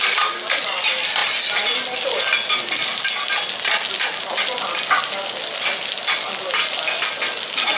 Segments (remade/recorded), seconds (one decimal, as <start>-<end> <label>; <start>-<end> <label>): 0.0-7.8 recorded